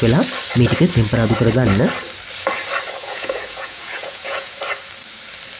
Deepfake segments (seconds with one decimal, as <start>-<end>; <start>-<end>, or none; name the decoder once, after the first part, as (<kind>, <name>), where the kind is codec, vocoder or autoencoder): 3.0-4.6 (vocoder, Vocos)